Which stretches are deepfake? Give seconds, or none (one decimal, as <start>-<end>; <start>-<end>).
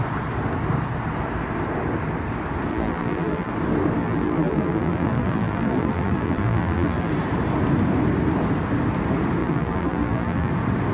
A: 2.7-3.5; 4.0-7.1; 9.4-10.5